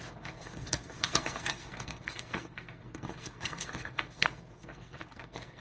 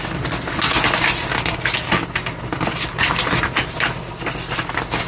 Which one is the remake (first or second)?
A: first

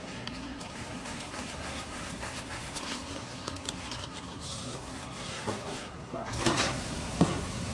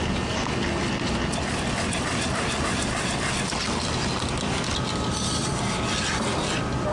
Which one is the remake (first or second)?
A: first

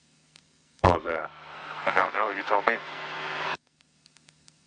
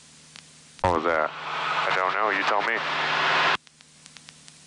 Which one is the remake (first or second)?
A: first